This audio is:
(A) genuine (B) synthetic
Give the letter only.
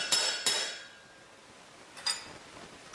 A